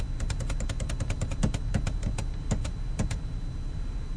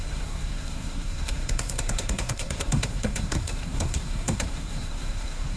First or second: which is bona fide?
first